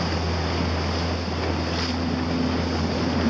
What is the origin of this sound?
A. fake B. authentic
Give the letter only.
B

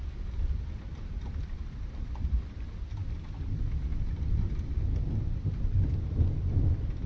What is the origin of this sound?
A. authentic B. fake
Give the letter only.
A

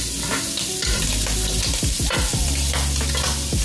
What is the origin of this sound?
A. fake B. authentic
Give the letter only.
B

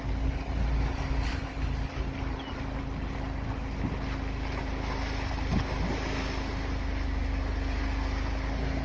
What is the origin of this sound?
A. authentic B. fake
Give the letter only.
A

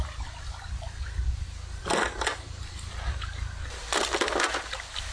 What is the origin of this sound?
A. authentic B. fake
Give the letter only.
A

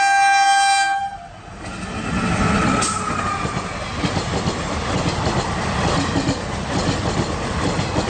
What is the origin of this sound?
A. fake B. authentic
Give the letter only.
B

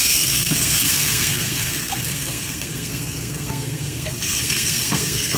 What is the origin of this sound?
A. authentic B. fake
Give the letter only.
B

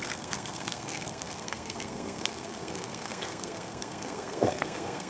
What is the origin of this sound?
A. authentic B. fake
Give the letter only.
B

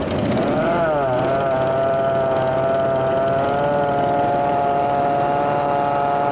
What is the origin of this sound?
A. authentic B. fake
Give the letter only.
A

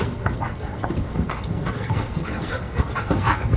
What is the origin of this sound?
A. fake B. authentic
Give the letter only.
A